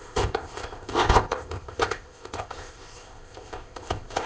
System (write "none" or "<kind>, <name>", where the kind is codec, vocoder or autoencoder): codec, ZipCodec